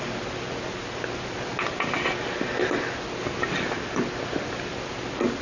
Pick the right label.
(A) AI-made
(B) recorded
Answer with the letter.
B